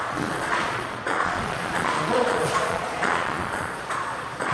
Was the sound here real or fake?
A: fake